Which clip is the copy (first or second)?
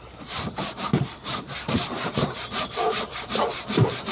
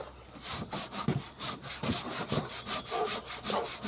first